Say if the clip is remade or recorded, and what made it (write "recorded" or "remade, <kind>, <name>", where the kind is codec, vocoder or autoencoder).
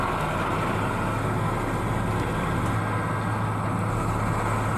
recorded